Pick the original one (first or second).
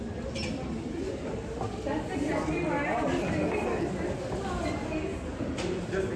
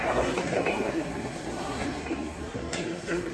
first